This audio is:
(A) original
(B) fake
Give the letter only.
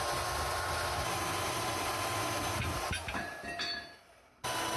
A